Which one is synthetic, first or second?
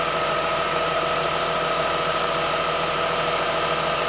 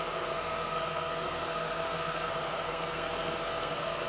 second